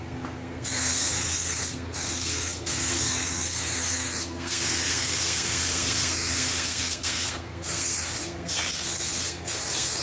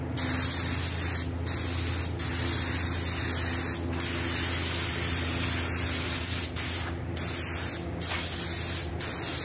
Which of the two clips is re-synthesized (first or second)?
first